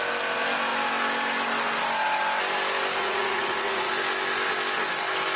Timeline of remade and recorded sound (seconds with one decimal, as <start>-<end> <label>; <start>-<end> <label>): 0.0-3.0 recorded; 3.0-3.9 remade; 3.9-5.4 recorded